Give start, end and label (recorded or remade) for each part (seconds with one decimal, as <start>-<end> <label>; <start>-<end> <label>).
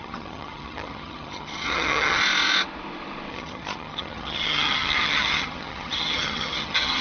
0.0-2.2 remade; 2.2-3.3 recorded; 3.3-7.0 remade